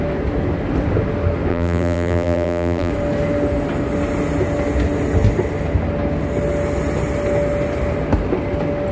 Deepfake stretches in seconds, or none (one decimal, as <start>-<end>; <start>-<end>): 1.5-2.9